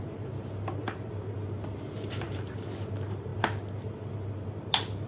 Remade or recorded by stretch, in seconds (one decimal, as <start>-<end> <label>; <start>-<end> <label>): 0.0-3.3 remade; 3.3-5.1 recorded